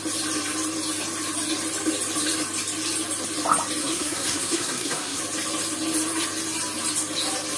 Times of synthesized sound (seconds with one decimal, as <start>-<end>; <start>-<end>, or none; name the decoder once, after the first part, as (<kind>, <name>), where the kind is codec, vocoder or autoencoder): 3.8-5.2 (codec, SNAC)